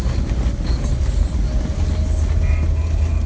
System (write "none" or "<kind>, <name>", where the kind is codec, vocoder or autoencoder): none